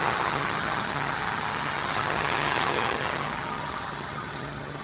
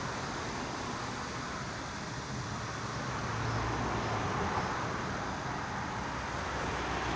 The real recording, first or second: second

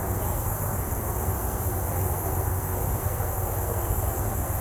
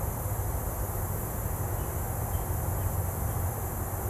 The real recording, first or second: second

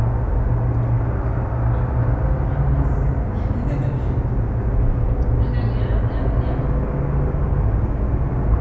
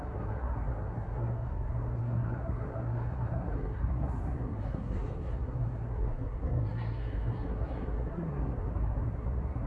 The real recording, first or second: first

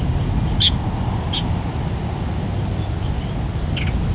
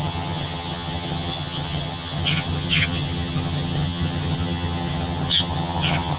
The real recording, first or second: first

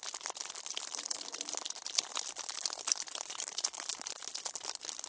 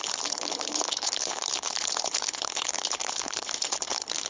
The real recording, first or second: first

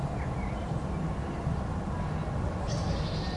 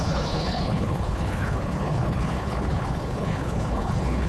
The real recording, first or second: first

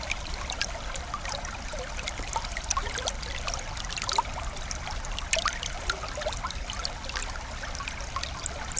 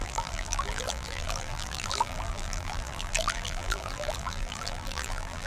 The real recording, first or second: first